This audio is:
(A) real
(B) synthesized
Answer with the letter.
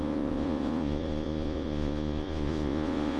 B